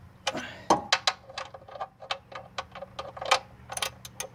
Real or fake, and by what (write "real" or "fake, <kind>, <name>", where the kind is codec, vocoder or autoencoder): real